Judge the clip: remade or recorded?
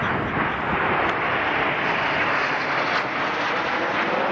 recorded